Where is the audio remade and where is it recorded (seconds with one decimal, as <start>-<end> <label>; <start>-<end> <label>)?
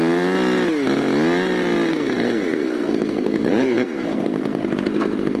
0.0-1.9 recorded; 1.9-5.4 remade